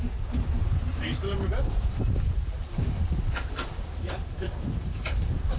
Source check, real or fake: fake